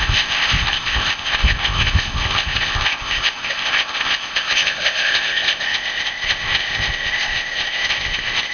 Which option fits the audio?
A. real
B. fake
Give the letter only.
B